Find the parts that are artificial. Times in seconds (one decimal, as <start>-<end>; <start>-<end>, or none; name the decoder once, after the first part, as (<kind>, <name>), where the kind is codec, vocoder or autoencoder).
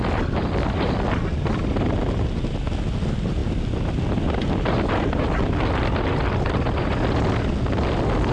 none